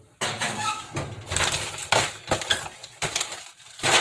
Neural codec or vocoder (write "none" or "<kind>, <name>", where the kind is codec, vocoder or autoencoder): none